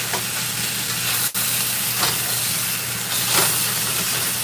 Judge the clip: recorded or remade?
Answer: recorded